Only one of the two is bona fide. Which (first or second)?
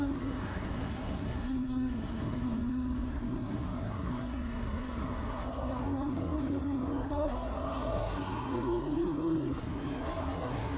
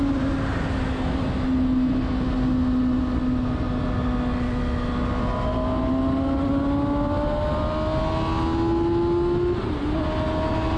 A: second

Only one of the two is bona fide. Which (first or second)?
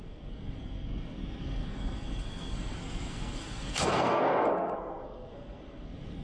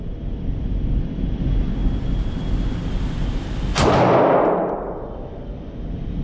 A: second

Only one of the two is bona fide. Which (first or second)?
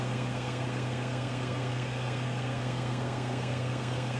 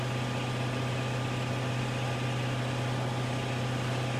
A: second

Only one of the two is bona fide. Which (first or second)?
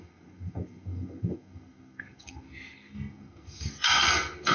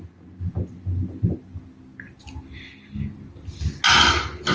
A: second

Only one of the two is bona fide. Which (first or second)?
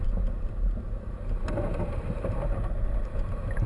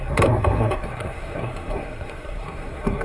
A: first